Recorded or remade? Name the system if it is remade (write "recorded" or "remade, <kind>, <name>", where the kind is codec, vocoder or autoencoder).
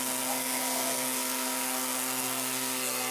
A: remade, codec, SNAC